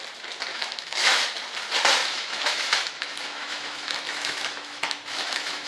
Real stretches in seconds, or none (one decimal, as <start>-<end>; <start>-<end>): 0.0-0.5; 1.2-2.0